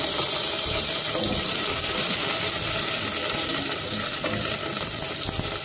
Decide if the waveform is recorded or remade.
recorded